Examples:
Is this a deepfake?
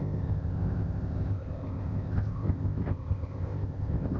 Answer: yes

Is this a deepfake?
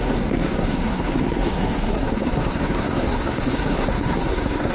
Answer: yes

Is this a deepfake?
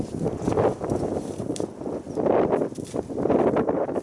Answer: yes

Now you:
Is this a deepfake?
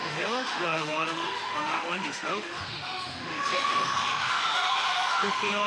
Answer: yes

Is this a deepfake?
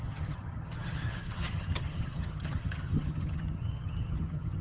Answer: yes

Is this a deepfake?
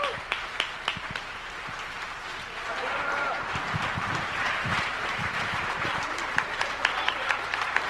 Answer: yes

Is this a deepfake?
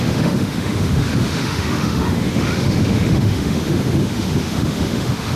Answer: yes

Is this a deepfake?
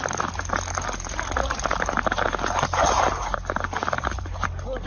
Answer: no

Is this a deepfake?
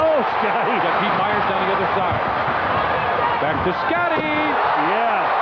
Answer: no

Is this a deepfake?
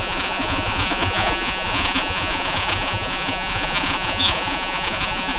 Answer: yes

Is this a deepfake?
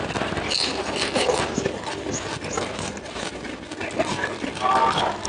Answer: no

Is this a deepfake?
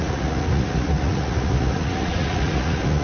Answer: yes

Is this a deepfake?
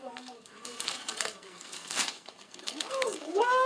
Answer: yes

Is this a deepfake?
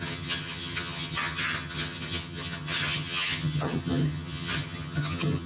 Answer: yes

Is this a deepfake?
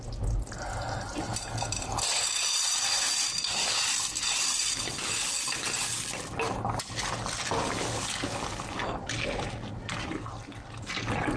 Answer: no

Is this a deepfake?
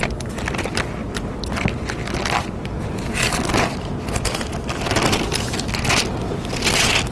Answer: no